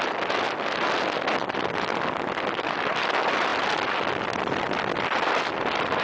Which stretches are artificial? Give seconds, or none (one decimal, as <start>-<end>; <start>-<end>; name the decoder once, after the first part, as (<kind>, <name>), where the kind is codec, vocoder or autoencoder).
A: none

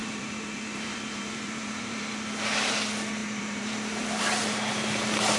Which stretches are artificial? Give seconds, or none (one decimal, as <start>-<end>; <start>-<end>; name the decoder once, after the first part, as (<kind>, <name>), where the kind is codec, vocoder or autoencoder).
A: 0.0-2.0 (vocoder, BigVGAN v2); 3.2-3.7

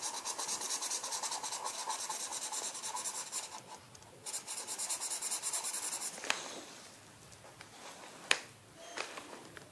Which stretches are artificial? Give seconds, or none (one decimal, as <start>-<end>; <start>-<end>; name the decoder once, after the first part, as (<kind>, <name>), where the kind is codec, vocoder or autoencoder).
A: 0.0-2.3 (vocoder, BigVGAN v2); 4.3-9.7

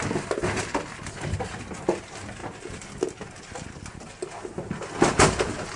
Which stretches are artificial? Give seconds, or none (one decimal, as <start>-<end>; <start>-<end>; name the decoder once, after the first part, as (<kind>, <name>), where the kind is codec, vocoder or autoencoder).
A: none

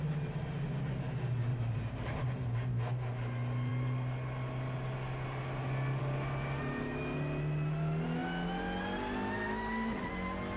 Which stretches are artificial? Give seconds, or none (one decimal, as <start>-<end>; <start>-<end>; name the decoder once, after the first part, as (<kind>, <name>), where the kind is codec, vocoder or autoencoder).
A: 1.5-2.3 (vocoder, BigVGAN v2)

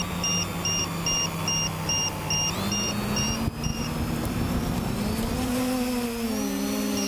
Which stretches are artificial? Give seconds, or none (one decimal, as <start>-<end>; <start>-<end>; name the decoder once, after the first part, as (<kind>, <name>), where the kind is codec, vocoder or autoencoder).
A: 3.7-5.6 (vocoder, BigVGAN v2)

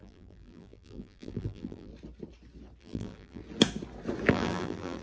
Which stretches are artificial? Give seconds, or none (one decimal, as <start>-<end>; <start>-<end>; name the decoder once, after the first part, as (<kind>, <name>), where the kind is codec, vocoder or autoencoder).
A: 0.0-1.9 (vocoder, BigVGAN v2); 2.8-3.4; 4.3-5.0